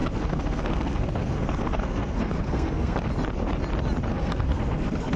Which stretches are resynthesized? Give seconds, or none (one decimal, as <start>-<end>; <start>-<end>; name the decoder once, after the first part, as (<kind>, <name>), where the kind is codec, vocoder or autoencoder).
0.0-3.1 (codec, SNAC); 4.1-5.2